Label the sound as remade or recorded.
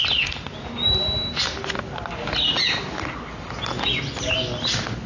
recorded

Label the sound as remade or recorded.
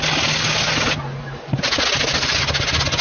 recorded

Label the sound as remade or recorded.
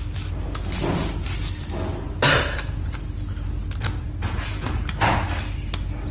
recorded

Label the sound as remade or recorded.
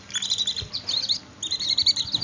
recorded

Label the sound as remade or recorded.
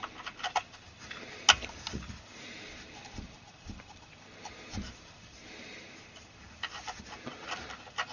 recorded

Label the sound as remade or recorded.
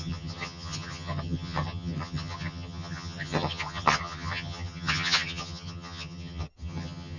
remade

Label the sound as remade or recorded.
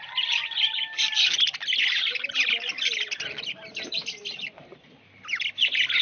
recorded